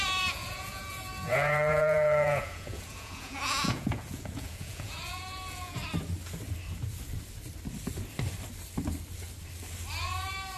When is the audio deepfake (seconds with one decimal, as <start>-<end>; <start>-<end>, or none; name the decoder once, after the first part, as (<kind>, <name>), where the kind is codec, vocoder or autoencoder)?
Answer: 0.0-5.8 (vocoder, Vocos)